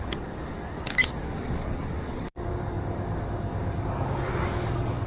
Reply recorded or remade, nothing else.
remade